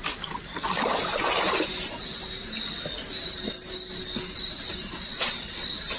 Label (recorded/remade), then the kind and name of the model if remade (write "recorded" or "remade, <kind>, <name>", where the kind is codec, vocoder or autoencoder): recorded